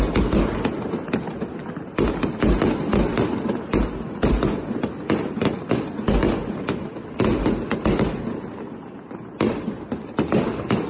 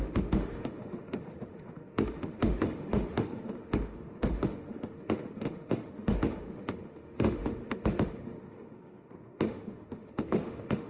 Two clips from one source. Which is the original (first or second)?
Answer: first